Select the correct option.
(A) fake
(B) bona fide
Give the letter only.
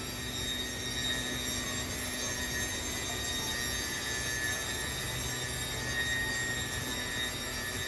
B